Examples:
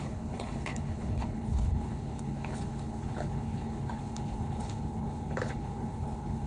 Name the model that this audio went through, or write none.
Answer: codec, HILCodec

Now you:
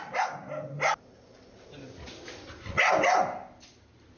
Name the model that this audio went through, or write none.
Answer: none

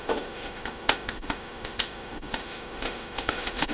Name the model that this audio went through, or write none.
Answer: autoencoder, DAC-VAE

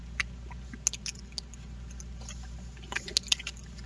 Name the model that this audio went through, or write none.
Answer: none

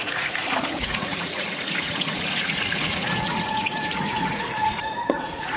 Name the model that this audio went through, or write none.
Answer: vocoder, Vocos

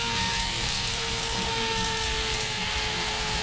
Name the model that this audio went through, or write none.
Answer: codec, SNAC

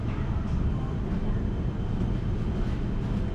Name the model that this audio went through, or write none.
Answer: none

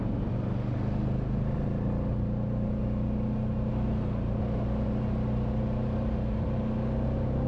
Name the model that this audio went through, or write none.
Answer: none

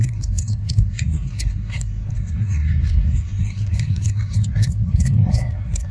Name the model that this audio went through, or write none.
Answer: codec, SNAC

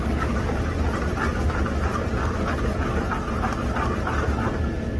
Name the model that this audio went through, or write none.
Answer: none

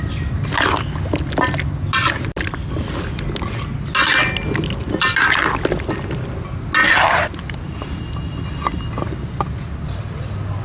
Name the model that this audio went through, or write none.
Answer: none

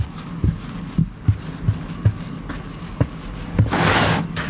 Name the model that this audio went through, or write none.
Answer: none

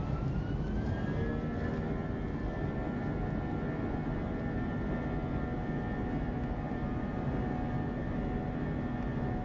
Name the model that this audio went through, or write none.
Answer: none